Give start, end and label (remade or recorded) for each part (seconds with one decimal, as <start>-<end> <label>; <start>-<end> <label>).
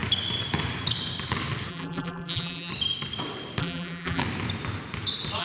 0.0-1.7 recorded; 1.7-2.7 remade; 2.7-3.6 recorded; 3.6-4.2 remade; 4.2-5.4 recorded